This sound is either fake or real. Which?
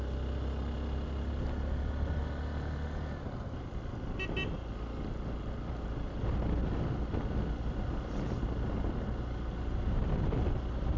real